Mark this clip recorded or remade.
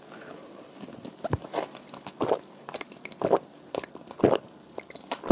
recorded